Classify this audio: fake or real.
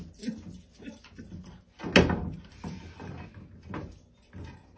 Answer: real